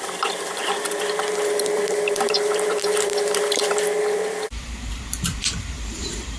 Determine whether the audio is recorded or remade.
remade